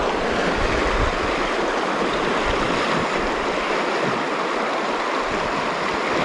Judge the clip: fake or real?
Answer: real